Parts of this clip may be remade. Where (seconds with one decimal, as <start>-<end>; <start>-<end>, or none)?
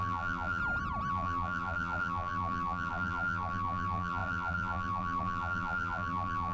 0.0-0.6; 1.1-6.5